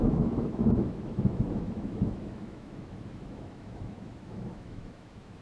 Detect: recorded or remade remade